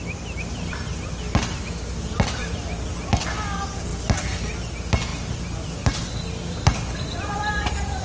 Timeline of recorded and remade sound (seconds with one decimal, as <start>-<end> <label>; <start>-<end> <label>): 0.0-8.0 recorded